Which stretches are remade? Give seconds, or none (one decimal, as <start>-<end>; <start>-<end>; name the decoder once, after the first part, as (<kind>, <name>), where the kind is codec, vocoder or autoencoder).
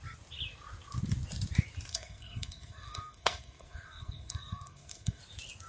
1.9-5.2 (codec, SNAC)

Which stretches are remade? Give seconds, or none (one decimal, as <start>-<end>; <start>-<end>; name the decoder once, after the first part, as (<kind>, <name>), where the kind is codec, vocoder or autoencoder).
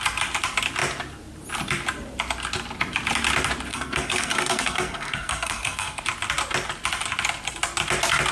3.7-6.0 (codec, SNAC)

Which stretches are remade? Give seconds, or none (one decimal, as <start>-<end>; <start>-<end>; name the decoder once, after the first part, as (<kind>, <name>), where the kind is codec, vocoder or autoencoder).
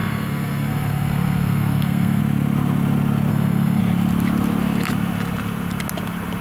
0.0-2.2 (codec, SNAC); 3.3-3.8